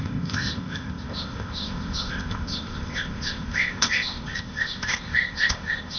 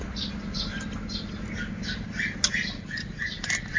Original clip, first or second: second